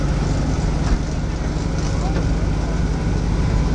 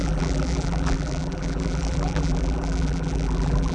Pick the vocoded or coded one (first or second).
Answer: second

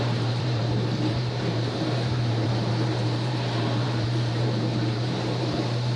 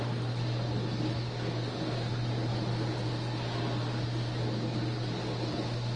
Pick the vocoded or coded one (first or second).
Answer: first